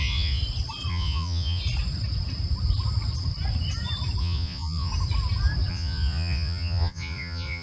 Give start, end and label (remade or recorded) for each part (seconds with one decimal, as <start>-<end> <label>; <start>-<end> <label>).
0.0-0.4 remade; 0.4-0.9 recorded; 0.9-1.6 remade; 1.6-4.2 recorded; 4.2-4.9 remade; 4.9-5.7 recorded; 5.7-7.6 remade

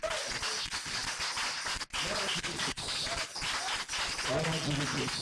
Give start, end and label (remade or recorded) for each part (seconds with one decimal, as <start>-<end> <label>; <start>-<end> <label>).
0.0-2.3 recorded; 2.3-3.0 remade; 3.0-5.2 recorded

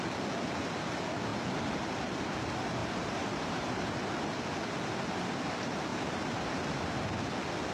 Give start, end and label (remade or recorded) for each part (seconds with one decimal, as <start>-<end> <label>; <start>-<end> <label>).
0.0-2.8 recorded; 2.8-4.4 remade; 4.4-5.9 recorded; 5.9-7.0 remade; 7.0-7.7 recorded

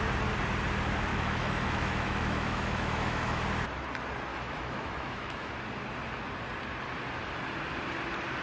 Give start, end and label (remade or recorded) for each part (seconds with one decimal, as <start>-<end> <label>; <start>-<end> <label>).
0.0-1.1 recorded; 1.1-3.4 remade; 3.4-4.3 recorded; 4.3-5.5 remade; 5.5-8.4 recorded